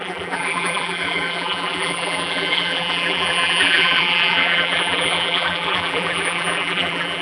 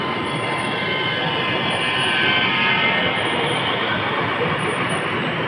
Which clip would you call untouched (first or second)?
second